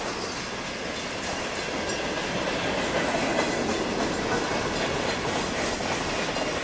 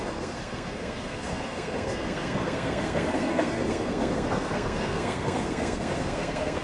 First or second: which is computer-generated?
second